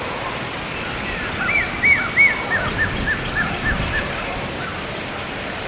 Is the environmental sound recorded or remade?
recorded